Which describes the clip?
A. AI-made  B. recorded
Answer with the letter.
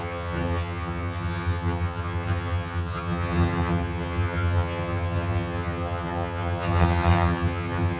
A